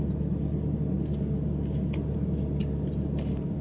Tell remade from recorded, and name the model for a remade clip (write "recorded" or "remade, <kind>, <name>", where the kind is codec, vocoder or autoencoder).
recorded